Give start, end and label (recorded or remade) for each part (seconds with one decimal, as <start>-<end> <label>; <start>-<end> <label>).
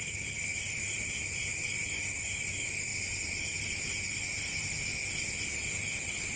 0.0-4.9 remade; 4.9-5.7 recorded; 5.7-6.4 remade